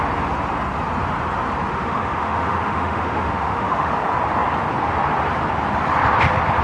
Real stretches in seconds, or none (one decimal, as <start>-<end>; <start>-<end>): 0.0-1.7; 3.9-6.6